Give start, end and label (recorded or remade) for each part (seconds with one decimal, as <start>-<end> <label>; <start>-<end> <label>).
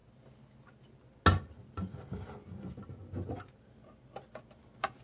0.0-5.0 recorded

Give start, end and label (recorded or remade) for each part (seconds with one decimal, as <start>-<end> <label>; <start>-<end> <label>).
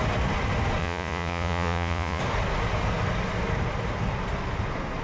0.0-0.8 recorded; 0.8-2.2 remade; 2.2-5.0 recorded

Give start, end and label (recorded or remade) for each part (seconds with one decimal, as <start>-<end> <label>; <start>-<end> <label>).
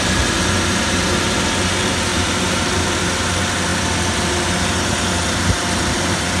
0.0-2.1 recorded; 2.1-3.0 remade; 3.0-6.4 recorded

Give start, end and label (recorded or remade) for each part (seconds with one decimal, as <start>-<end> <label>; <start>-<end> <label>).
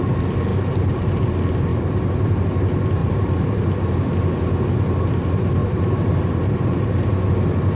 0.0-0.5 recorded; 0.5-1.2 remade; 1.2-1.7 recorded; 1.7-2.6 remade; 2.6-3.0 recorded; 3.0-3.7 remade; 3.7-5.6 recorded; 5.6-7.3 remade; 7.3-7.8 recorded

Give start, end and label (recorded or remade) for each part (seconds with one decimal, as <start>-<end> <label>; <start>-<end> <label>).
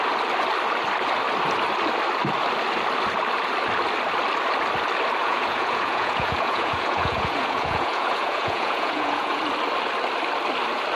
0.0-5.2 recorded; 5.2-9.4 remade; 9.4-11.0 recorded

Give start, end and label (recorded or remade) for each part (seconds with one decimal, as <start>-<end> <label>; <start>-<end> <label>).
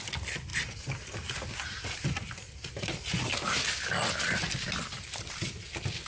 0.0-6.1 recorded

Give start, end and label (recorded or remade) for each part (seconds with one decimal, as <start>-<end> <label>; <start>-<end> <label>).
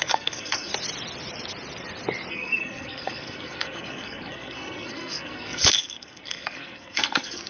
0.0-0.7 remade; 0.7-2.3 recorded; 2.3-7.5 remade